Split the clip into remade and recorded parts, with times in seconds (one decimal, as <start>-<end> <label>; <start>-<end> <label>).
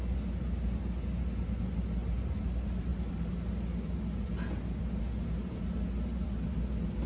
0.0-7.1 recorded